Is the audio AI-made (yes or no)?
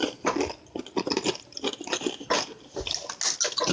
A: no